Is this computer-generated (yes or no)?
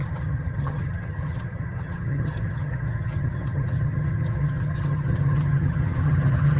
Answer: yes